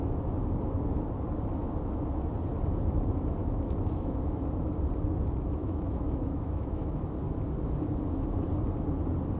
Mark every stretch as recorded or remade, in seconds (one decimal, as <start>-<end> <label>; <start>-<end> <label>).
0.0-3.4 recorded; 3.4-4.7 remade; 4.7-5.6 recorded; 5.6-7.0 remade; 7.0-9.4 recorded